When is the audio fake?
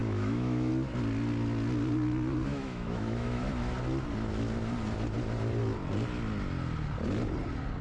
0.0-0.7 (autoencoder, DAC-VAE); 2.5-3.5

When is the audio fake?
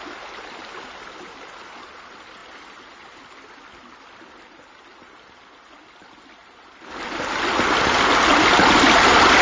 none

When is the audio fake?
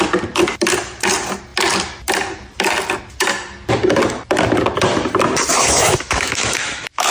5.5-7.1 (autoencoder, DAC-VAE)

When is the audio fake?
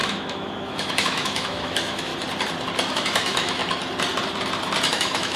0.0-2.1 (autoencoder, DAC-VAE); 2.9-3.6; 4.9-5.4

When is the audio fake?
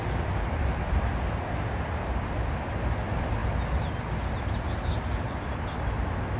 none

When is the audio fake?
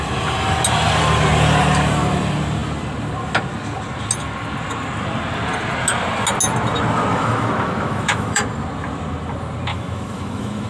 7.1-8.4 (autoencoder, DAC-VAE); 9.7-10.7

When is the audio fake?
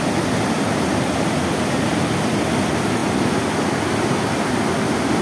none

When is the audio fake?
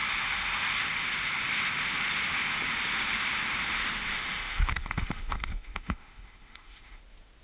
4.1-7.0 (autoencoder, DAC-VAE)